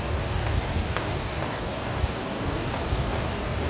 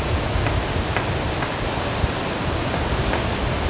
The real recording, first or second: second